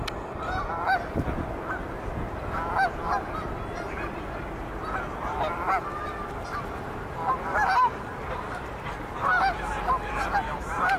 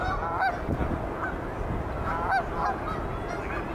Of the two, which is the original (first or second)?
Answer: second